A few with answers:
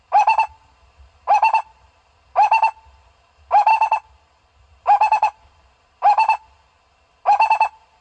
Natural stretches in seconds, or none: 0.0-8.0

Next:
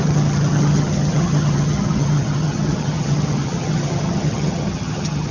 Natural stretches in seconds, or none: none

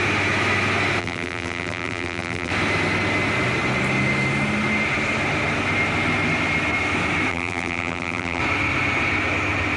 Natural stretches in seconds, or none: 0.0-1.0; 2.5-7.3; 8.4-9.8

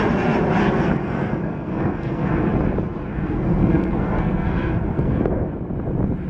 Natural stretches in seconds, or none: 0.0-0.6; 2.3-3.1; 5.5-6.3